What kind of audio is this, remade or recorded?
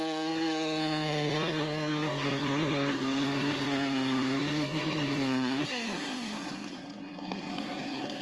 remade